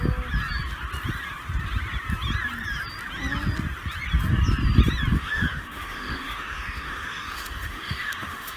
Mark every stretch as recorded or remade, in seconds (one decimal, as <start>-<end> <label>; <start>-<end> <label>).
0.0-5.1 recorded; 5.1-8.6 remade